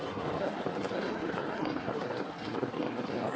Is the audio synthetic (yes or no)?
yes